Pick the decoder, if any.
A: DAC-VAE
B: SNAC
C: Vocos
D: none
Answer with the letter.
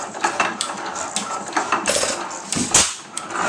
D